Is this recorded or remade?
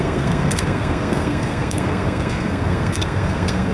remade